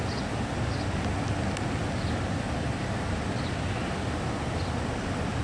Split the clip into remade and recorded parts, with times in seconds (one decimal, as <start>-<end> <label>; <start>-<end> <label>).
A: 0.0-5.4 recorded

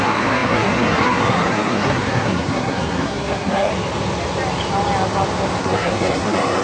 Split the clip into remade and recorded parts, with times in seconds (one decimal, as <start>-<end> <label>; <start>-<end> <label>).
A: 0.0-3.7 remade; 3.7-5.6 recorded; 5.6-6.6 remade

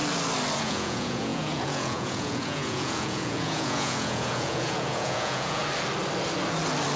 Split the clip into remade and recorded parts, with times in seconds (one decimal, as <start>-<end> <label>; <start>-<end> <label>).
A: 0.0-0.6 recorded; 0.6-5.6 remade; 5.6-7.0 recorded

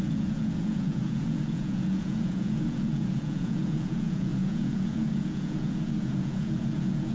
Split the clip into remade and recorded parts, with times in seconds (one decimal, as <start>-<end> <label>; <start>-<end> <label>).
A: 0.0-7.1 remade